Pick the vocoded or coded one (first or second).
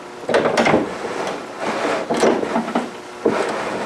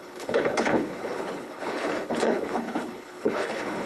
second